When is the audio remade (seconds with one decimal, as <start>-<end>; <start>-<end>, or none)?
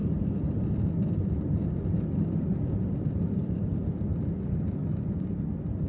none